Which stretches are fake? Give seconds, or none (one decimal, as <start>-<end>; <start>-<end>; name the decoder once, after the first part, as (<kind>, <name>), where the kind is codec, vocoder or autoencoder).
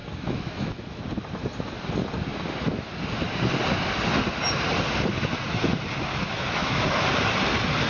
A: 0.0-1.0 (autoencoder, DAC-VAE); 6.1-6.8